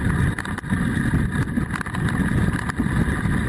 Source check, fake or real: real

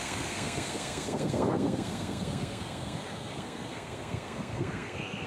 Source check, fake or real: fake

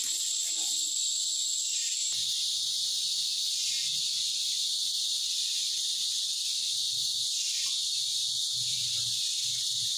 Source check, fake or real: real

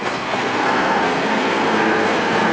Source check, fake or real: fake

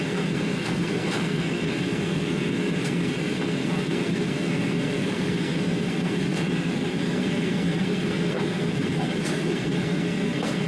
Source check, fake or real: fake